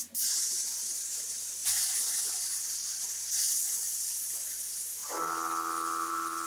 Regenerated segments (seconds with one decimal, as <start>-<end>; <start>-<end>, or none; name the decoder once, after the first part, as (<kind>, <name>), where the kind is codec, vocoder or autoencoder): none